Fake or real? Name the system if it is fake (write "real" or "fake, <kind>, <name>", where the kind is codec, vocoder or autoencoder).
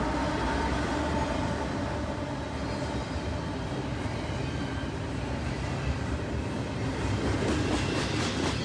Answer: real